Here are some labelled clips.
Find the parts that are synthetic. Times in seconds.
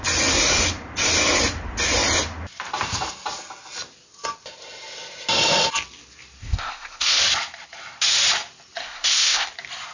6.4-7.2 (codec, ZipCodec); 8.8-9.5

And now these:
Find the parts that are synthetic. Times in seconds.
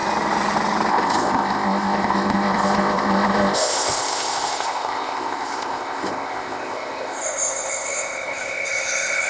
0.9-9.3 (codec, ZipCodec)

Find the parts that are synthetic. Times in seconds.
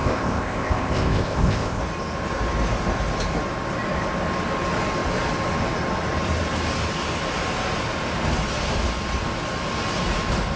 0.0-1.8 (codec, ZipCodec)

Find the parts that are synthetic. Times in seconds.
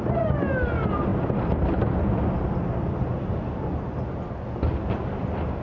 none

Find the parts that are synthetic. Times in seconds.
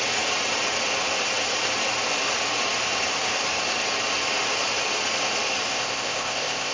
5.7-6.7 (codec, ZipCodec)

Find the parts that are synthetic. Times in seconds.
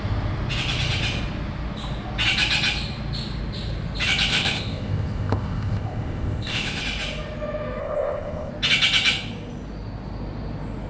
4.3-6.8 (codec, ZipCodec); 7.8-8.5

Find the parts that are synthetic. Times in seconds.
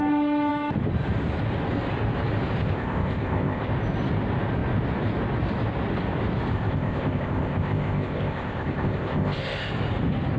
2.6-3.7 (codec, ZipCodec); 6.5-9.7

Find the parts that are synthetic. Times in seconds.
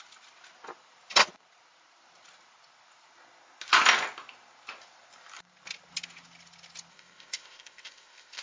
6.9-8.4 (codec, ZipCodec)